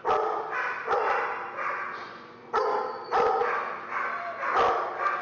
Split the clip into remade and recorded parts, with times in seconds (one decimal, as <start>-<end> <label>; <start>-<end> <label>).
0.0-1.7 recorded; 1.7-2.5 remade; 2.5-5.2 recorded